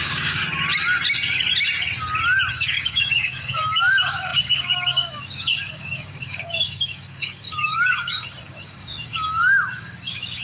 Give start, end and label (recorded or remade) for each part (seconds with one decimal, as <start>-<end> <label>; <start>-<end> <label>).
0.0-0.4 remade; 0.4-2.5 recorded; 2.5-10.4 remade

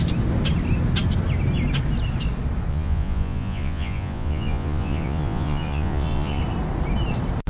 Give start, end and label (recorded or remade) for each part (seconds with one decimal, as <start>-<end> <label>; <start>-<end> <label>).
0.0-2.7 recorded; 2.7-6.4 remade; 6.4-7.5 recorded

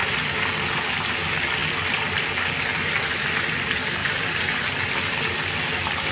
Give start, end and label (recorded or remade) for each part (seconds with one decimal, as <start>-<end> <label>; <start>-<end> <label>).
0.0-4.0 recorded; 4.0-4.6 remade; 4.6-6.1 recorded